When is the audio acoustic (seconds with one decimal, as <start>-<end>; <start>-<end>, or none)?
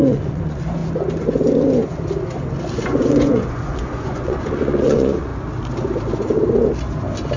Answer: 0.8-2.9; 5.3-7.4